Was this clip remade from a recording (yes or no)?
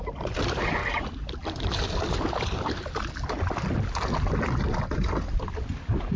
no